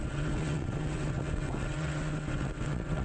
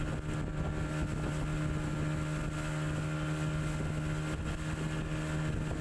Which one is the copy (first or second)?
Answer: first